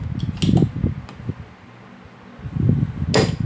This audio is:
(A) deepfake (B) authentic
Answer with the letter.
B